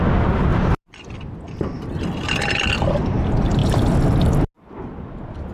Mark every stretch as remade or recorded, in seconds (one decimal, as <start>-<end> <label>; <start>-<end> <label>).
0.0-0.5 recorded; 0.5-2.9 remade; 2.9-5.5 recorded